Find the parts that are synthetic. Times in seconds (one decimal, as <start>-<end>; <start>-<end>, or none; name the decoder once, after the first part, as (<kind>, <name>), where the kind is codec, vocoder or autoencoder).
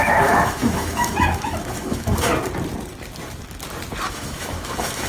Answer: 0.0-2.3 (autoencoder, DAC-VAE); 4.1-5.1